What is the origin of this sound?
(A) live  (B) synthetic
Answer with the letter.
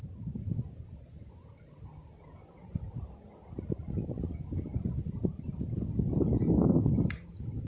A